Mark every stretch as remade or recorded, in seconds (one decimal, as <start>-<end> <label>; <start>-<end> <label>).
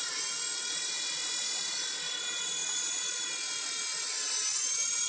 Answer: 0.0-5.1 recorded